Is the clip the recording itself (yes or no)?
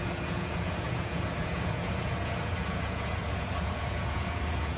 no